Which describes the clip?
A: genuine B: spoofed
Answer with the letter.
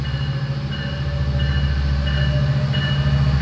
A